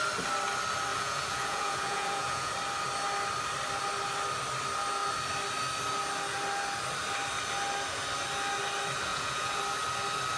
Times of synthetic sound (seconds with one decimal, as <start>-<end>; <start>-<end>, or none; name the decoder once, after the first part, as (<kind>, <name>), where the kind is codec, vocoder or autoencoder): 0.9-2.5 (vocoder, Vocos); 9.1-9.6